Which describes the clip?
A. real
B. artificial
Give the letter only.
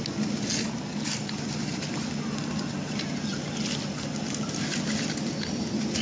A